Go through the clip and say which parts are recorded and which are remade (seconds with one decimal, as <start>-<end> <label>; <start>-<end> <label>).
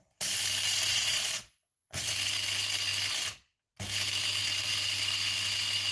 0.0-0.9 recorded; 0.9-2.1 remade; 2.1-5.9 recorded